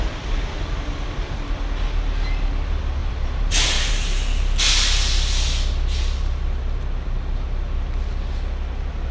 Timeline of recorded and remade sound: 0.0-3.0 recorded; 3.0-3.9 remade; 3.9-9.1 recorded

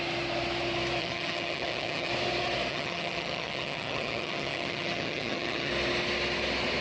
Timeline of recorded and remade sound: 0.0-1.0 recorded; 1.0-2.1 remade; 2.1-2.7 recorded; 2.7-5.7 remade; 5.7-6.8 recorded

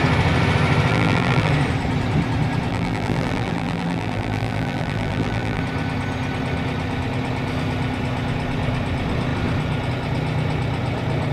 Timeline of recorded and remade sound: 0.0-0.9 recorded; 0.9-1.5 remade; 1.5-2.7 recorded; 2.7-5.6 remade; 5.6-11.3 recorded

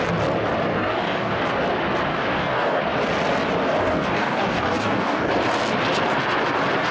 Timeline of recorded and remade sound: 0.0-0.7 recorded; 0.7-1.4 remade; 1.4-2.1 recorded; 2.1-2.8 remade; 2.8-3.8 recorded; 3.8-5.3 remade; 5.3-6.9 recorded

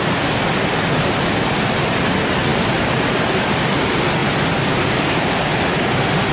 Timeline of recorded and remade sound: 0.0-2.5 recorded; 2.5-3.3 remade; 3.3-4.2 recorded; 4.2-5.1 remade; 5.1-6.3 recorded

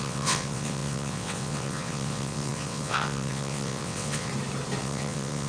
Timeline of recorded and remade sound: 0.0-4.3 remade; 4.3-4.8 recorded; 4.8-5.5 remade